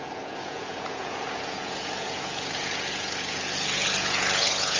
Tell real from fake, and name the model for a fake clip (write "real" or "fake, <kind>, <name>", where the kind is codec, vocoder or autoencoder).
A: fake, vocoder, Vocos